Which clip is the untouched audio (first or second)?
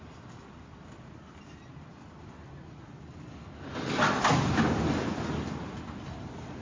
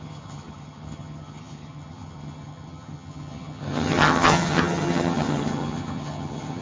first